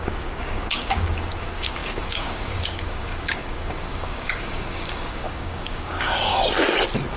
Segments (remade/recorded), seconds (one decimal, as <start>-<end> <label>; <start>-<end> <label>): 0.0-6.3 remade; 6.3-7.2 recorded